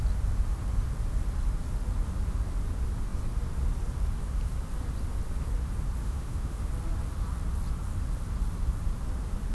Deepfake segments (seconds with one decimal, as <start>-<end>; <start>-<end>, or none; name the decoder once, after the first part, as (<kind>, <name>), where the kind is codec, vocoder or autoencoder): 6.0-6.7 (autoencoder, DAC-VAE)